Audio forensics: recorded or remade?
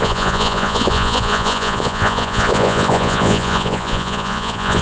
remade